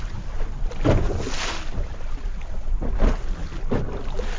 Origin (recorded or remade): recorded